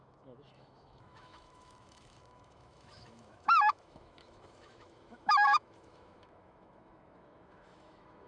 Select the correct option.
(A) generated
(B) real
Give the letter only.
A